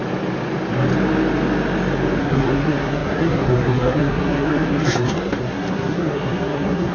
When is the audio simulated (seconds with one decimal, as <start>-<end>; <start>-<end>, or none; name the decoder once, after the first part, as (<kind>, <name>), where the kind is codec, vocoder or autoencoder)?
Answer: 2.2-6.9 (codec, SNAC)